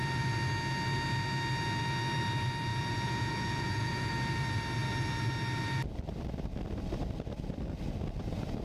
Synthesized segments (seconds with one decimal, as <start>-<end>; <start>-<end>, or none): 2.7-4.1